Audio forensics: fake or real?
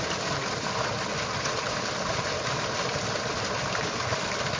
real